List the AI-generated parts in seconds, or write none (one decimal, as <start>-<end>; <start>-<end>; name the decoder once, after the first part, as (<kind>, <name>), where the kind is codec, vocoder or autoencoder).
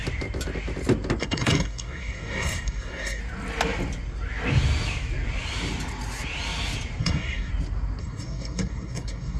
1.2-3.2 (codec, SNAC); 7.0-7.5; 8.0-9.4